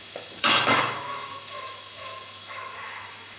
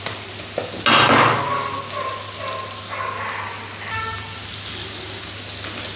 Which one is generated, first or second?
first